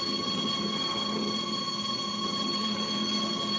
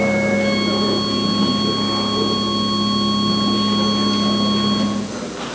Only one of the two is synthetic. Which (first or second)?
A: first